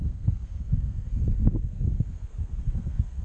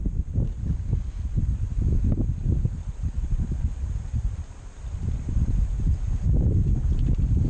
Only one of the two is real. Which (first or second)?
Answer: second